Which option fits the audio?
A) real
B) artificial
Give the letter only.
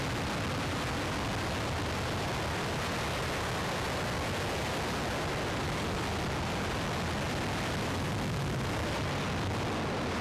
A